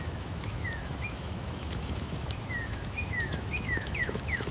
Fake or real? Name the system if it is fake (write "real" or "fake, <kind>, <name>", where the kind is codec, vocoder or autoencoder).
fake, autoencoder, DAC-VAE